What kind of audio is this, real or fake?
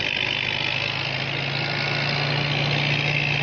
real